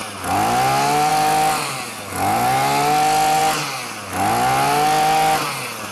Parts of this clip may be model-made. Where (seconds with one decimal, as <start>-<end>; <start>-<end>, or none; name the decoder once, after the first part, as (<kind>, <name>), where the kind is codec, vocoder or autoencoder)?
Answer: none